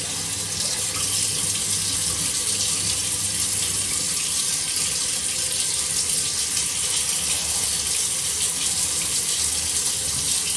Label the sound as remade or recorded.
recorded